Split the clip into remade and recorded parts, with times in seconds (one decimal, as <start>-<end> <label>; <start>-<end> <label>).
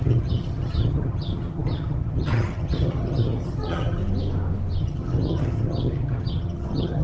0.0-4.0 remade; 4.0-4.8 recorded; 4.8-7.0 remade